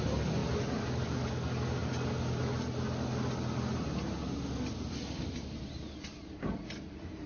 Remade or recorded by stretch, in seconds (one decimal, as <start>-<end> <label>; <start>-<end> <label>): 0.0-7.3 recorded